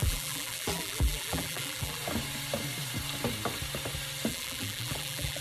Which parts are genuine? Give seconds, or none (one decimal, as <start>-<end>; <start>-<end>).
2.0-4.3